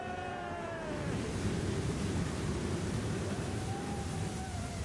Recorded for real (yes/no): no